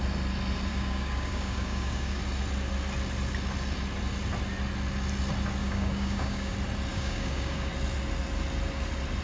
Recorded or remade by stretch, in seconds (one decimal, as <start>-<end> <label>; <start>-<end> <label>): 0.0-0.7 recorded; 0.7-2.2 remade; 2.2-5.6 recorded; 5.6-6.5 remade; 6.5-6.9 recorded; 6.9-7.7 remade; 7.7-9.2 recorded